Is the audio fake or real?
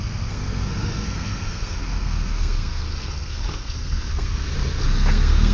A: fake